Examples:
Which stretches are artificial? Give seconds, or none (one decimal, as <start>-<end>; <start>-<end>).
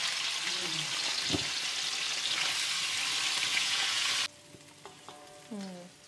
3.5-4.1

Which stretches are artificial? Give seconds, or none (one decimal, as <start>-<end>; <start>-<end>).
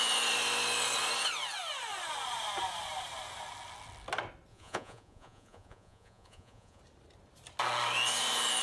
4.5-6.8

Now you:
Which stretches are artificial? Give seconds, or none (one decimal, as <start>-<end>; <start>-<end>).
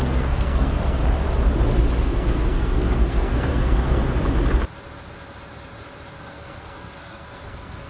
0.0-1.0; 2.0-4.0; 6.2-7.9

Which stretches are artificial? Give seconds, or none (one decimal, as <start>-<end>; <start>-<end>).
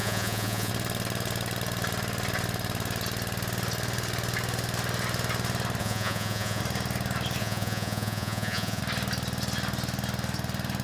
0.0-0.7; 5.8-6.6; 7.4-8.8